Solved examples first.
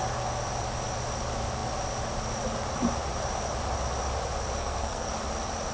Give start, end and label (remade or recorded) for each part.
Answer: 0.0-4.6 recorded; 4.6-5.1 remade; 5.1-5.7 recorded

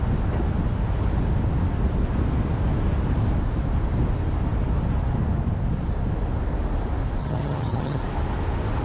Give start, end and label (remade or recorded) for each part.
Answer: 0.0-7.2 recorded; 7.2-8.0 remade; 8.0-8.8 recorded

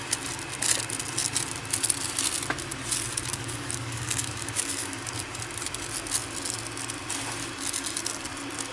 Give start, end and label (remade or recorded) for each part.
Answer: 0.0-3.1 recorded; 3.1-5.2 remade; 5.2-8.7 recorded

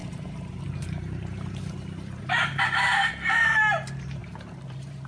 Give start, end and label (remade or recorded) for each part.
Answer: 0.0-3.1 remade; 3.1-4.2 recorded; 4.2-5.1 remade

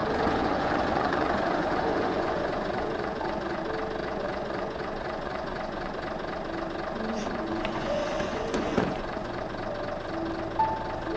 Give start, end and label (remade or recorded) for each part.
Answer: 0.0-3.6 remade; 3.6-4.0 recorded; 4.0-5.9 remade; 5.9-7.1 recorded; 7.1-9.4 remade; 9.4-11.2 recorded

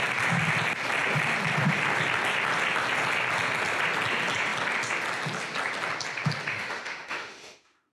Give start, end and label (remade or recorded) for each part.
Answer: 0.0-6.5 recorded; 6.5-7.9 remade